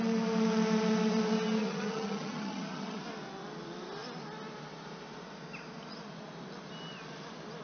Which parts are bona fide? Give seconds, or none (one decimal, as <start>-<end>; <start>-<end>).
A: 0.0-1.6; 3.0-7.6